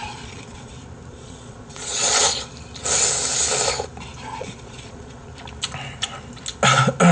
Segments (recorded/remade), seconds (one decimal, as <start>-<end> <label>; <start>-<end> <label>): 0.0-0.7 remade; 0.7-1.1 recorded; 1.1-2.5 remade; 2.5-4.4 recorded; 4.4-5.3 remade; 5.3-7.1 recorded